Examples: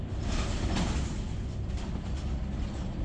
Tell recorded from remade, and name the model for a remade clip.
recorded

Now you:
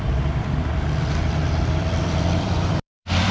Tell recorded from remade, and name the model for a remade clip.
remade, vocoder, BigVGAN v2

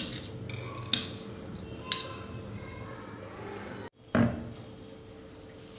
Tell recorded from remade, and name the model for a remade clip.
recorded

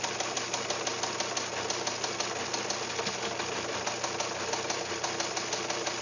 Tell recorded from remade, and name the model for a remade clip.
recorded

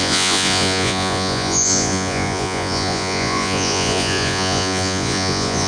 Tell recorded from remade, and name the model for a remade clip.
remade, vocoder, Vocos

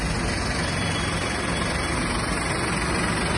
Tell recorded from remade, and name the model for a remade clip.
recorded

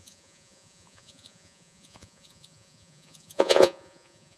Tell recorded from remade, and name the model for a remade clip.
remade, vocoder, Vocos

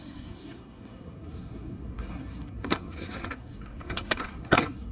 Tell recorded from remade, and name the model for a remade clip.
remade, codec, SNAC